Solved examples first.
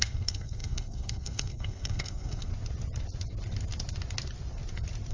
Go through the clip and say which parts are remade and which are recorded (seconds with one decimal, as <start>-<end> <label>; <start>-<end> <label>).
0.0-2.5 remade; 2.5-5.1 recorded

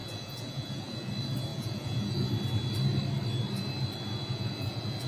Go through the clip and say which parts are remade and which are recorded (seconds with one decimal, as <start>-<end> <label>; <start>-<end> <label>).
0.0-1.1 remade; 1.1-1.5 recorded; 1.5-2.3 remade; 2.3-4.2 recorded; 4.2-5.1 remade

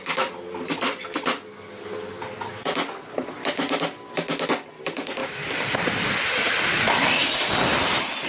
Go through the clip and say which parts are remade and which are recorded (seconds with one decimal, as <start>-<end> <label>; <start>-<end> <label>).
0.0-8.3 recorded